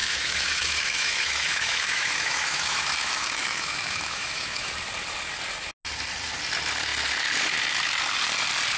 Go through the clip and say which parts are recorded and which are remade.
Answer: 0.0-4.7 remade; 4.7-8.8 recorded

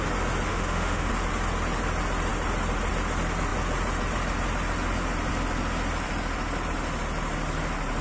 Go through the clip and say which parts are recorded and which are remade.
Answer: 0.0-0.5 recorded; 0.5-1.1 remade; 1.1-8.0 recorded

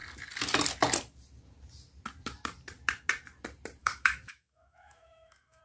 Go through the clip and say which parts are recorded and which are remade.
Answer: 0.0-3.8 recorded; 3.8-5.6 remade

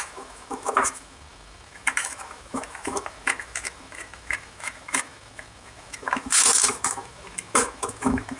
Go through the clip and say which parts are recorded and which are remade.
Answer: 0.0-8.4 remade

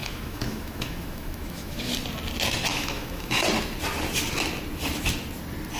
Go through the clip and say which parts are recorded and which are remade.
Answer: 0.0-1.9 remade; 1.9-2.7 recorded; 2.7-3.4 remade; 3.4-5.8 recorded

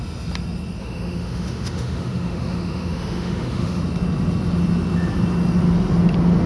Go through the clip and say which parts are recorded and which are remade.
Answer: 0.0-0.8 recorded; 0.8-3.8 remade; 3.8-6.5 recorded

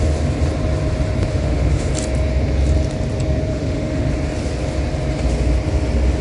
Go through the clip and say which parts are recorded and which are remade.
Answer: 0.0-1.3 recorded; 1.3-1.9 remade; 1.9-3.5 recorded; 3.5-4.1 remade; 4.1-6.2 recorded

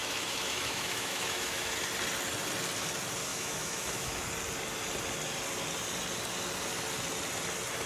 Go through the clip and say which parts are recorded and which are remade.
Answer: 0.0-1.7 remade; 1.7-3.3 recorded; 3.3-4.2 remade; 4.2-7.9 recorded